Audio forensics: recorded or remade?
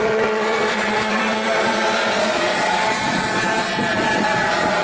remade